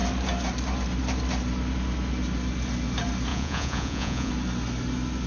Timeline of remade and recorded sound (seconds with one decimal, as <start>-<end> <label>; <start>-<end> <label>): 0.0-3.3 recorded; 3.3-4.3 remade; 4.3-5.3 recorded